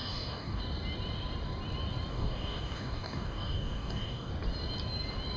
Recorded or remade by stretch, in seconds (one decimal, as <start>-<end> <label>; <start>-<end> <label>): 0.0-0.6 remade; 0.6-2.1 recorded; 2.1-4.3 remade; 4.3-5.4 recorded